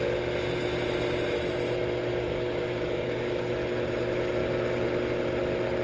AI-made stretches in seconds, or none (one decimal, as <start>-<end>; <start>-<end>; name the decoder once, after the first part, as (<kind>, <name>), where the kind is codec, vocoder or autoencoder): 2.1-3.5 (codec, DAC)